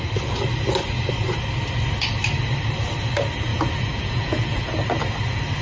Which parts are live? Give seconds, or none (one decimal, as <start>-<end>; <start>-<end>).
0.0-3.5; 4.8-5.6